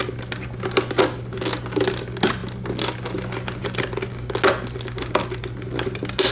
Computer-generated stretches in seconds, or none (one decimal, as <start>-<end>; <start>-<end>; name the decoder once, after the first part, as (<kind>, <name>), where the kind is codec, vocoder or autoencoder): none